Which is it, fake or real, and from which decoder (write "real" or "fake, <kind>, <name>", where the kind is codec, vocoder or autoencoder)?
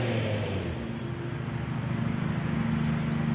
real